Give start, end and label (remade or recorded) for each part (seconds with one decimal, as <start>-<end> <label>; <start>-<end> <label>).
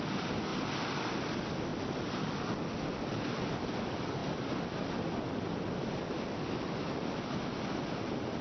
0.0-0.5 recorded; 0.5-1.1 remade; 1.1-1.7 recorded; 1.7-3.6 remade; 3.6-8.4 recorded